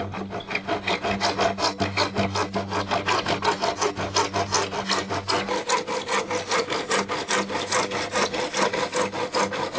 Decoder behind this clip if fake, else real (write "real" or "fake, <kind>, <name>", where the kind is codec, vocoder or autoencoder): real